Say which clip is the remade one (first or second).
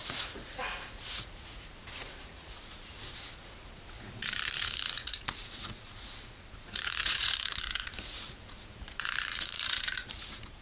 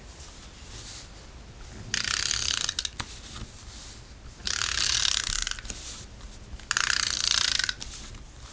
first